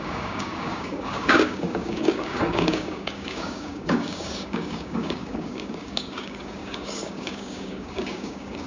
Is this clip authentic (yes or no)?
no